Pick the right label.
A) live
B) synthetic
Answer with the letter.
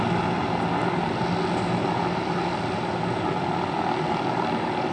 A